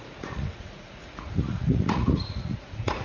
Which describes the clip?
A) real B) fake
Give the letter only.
B